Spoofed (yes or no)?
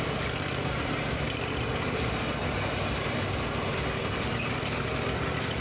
no